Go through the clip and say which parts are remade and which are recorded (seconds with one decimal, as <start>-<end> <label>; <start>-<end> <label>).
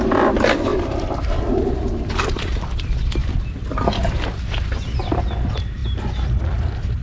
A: 0.0-0.7 recorded; 0.7-3.4 remade; 3.4-7.0 recorded